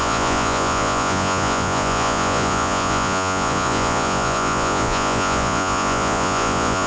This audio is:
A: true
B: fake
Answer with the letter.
B